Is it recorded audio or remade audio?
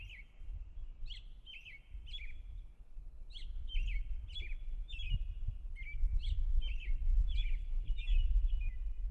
recorded